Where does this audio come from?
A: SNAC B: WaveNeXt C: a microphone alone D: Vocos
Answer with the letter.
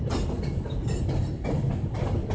C